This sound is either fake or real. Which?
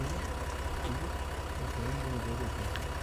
real